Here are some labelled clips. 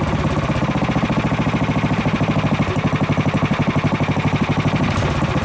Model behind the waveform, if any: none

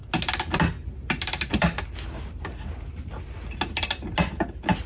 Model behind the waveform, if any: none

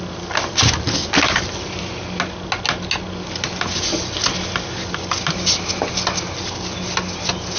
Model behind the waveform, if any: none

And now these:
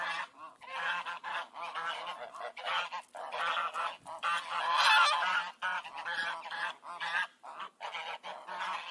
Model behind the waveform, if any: none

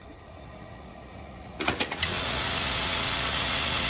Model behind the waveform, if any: vocoder, Vocos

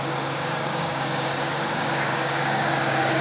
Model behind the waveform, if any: codec, DAC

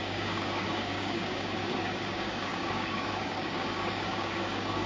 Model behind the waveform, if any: codec, DAC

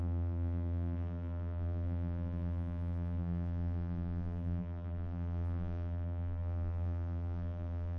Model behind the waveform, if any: vocoder, BigVGAN v2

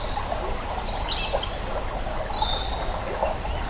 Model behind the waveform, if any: none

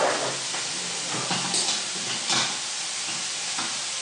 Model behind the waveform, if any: none